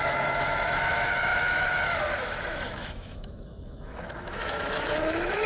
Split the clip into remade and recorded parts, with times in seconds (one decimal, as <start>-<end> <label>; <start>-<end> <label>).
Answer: 0.0-5.5 remade